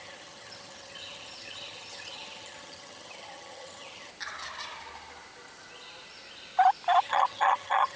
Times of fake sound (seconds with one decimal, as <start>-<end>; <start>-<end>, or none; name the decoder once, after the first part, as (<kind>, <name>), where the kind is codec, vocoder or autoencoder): 0.0-4.1 (vocoder, HiFi-GAN); 7.0-8.0